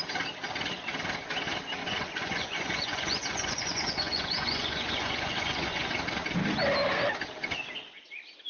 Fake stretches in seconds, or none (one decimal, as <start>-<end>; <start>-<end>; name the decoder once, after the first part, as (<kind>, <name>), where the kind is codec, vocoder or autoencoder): 1.8-5.9 (vocoder, Vocos)